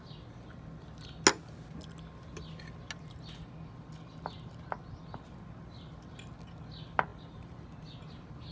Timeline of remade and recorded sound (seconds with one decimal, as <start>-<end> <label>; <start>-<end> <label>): 0.0-7.1 recorded; 7.1-8.0 remade; 8.0-8.5 recorded